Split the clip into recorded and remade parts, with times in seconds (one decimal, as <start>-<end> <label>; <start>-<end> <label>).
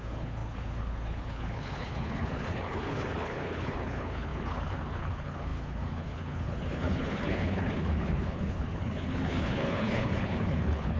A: 0.0-11.0 remade